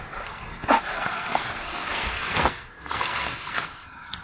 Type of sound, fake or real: fake